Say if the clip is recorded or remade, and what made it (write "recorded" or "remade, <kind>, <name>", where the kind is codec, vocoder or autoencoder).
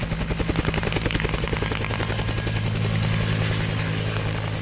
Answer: recorded